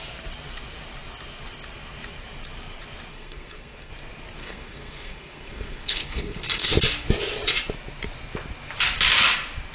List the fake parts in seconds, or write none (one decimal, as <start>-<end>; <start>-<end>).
3.1-3.9; 4.4-6.7